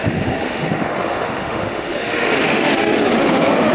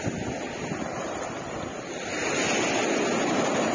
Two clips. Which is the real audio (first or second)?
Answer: second